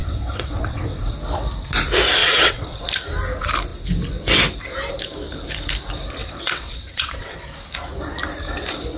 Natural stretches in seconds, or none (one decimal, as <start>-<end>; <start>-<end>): 1.0-2.2; 2.8-6.2; 7.4-9.0